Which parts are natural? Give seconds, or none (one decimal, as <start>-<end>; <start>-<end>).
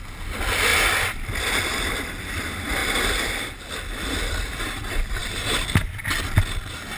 0.0-7.0